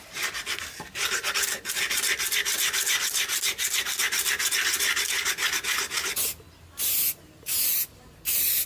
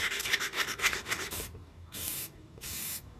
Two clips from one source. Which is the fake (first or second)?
second